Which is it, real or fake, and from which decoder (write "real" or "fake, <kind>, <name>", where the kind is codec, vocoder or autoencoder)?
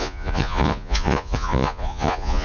fake, vocoder, Vocos